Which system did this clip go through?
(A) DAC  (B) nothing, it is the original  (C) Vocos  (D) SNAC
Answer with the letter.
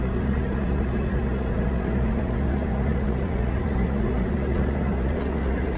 C